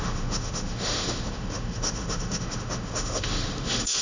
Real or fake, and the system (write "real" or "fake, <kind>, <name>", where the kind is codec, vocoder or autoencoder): fake, autoencoder, DAC-VAE